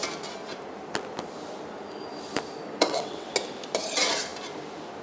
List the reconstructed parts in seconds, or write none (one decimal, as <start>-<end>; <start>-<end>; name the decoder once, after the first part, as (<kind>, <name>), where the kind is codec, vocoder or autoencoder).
2.7-3.3 (vocoder, WaveNeXt)